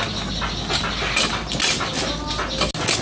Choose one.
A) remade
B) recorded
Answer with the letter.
B